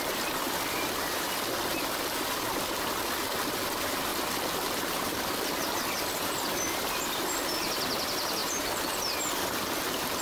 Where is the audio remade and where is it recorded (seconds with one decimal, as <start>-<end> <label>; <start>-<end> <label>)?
0.0-10.2 remade